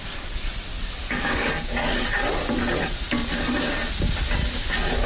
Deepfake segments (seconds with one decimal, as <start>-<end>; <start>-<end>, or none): 0.7-1.5